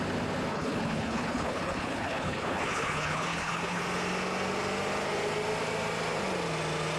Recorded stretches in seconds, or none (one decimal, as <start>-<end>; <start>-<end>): 0.0-0.5; 3.8-7.0